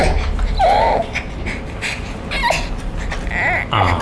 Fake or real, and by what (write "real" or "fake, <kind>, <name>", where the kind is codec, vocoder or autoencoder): real